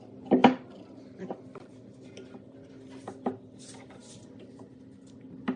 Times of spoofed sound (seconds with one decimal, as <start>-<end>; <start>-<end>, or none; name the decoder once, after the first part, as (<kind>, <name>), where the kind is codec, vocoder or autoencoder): none